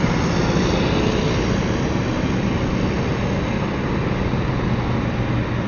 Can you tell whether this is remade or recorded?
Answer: recorded